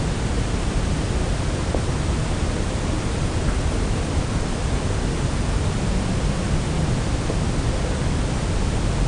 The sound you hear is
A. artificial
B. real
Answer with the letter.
B